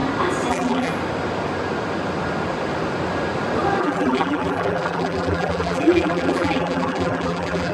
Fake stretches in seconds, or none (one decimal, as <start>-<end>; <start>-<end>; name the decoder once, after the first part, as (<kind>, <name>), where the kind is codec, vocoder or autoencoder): 0.5-0.9 (vocoder, BigVGAN v2); 3.8-7.7